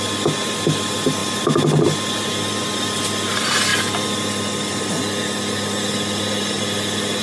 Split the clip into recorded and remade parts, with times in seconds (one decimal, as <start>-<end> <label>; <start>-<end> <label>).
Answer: 0.0-7.2 recorded